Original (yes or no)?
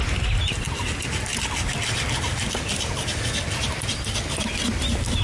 yes